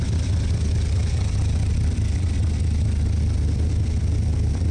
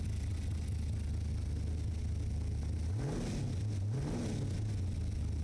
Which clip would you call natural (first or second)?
second